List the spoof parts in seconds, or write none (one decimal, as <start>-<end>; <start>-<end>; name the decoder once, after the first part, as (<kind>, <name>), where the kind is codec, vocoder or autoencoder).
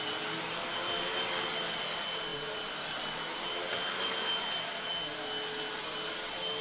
none